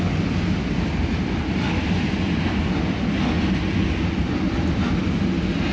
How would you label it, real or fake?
real